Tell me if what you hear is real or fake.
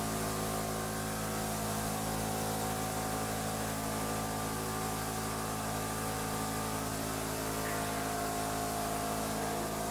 real